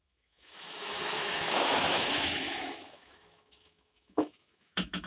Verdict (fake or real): fake